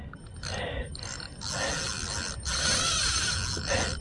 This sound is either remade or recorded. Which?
recorded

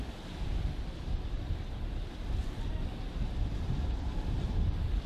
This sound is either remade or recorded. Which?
recorded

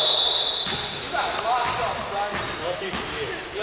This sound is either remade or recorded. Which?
recorded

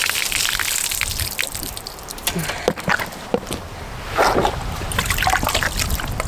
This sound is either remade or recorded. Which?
recorded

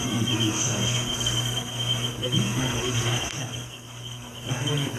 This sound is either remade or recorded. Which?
remade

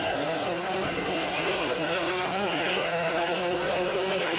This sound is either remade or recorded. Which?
remade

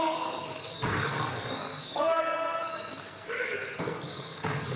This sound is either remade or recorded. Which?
remade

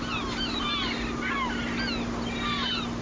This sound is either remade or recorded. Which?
recorded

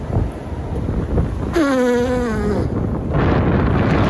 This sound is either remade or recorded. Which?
recorded